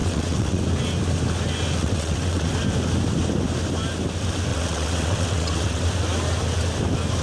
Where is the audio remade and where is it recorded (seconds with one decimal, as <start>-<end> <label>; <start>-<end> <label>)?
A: 0.0-0.6 remade; 0.6-1.8 recorded; 1.8-2.5 remade; 2.5-4.5 recorded; 4.5-5.8 remade; 5.8-7.2 recorded